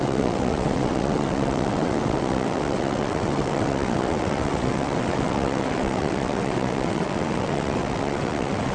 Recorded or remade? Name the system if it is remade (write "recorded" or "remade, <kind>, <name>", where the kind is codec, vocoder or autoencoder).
remade, vocoder, WaveNeXt